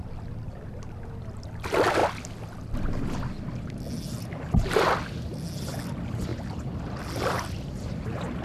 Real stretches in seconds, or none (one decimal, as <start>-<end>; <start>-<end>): 0.0-6.3; 7.0-8.4